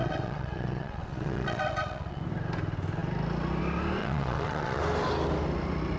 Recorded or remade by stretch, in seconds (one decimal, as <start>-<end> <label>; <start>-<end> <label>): 0.0-2.2 remade; 2.2-4.0 recorded; 4.0-4.8 remade; 4.8-6.0 recorded